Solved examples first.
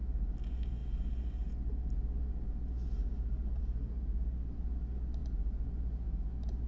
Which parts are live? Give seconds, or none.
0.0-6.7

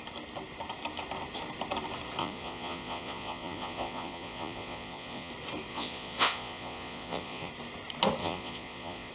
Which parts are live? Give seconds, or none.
0.0-2.2; 5.3-5.7; 7.5-8.2

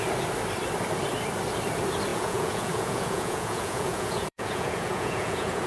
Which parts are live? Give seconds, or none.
0.0-2.1